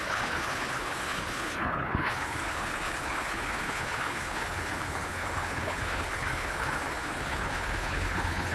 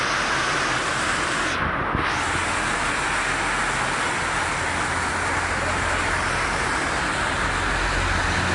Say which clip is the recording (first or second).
second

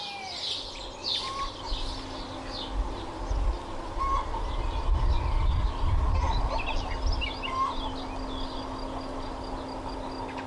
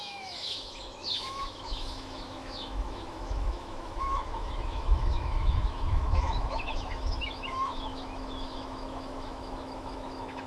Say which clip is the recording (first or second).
first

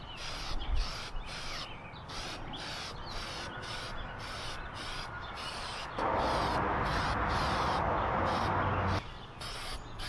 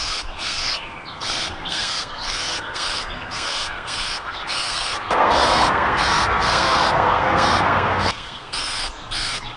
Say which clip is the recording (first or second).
first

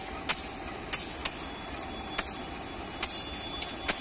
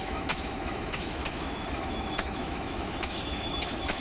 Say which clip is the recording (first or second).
first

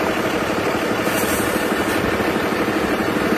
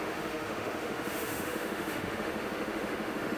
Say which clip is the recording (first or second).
first